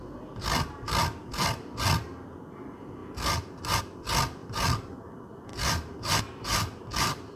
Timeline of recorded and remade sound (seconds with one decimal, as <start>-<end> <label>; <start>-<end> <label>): 0.0-7.4 recorded